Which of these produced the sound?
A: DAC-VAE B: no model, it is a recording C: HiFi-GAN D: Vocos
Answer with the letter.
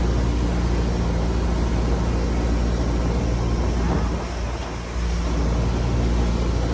B